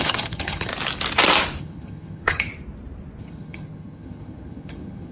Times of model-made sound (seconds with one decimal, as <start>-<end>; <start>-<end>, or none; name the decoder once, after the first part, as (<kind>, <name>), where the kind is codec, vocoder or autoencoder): 0.0-0.7 (vocoder, HiFi-GAN); 1.6-2.5; 3.2-5.1